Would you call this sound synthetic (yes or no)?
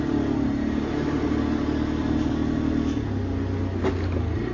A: no